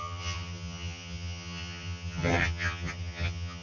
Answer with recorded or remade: remade